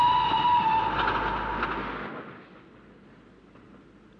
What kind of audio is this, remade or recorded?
recorded